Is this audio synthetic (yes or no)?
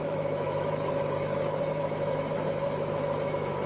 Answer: yes